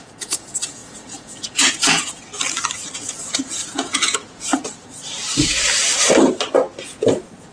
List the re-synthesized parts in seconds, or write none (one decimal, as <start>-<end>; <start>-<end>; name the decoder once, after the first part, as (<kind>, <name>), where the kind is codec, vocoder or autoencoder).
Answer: 0.0-2.3 (vocoder, Vocos); 3.0-4.5; 6.8-7.5